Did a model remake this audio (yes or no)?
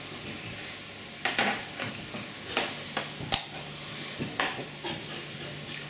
no